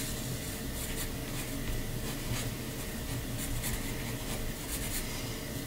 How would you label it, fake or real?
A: real